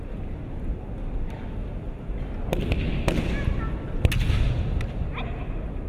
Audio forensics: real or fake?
real